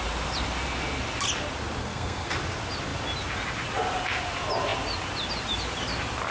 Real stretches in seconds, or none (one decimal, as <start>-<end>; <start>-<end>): 0.0-1.8; 2.4-6.3